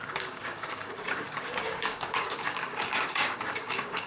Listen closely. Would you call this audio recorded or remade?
remade